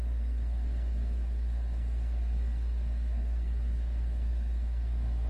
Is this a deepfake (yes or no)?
yes